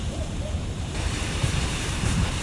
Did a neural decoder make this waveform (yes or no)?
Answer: yes